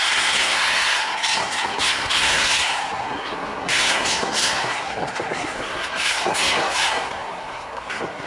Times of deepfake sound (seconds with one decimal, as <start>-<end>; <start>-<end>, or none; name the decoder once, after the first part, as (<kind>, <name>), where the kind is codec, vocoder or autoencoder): 0.0-8.3 (codec, SNAC)